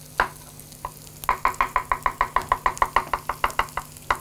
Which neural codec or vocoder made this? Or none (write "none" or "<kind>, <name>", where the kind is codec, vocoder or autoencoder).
none